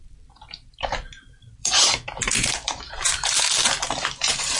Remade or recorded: remade